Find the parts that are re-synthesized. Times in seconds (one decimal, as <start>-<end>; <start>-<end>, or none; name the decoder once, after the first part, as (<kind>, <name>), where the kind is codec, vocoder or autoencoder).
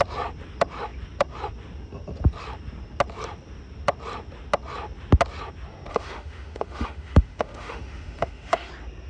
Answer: 5.9-8.7 (autoencoder, DAC-VAE)